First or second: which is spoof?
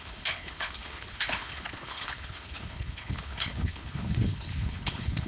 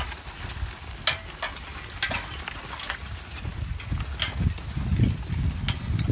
first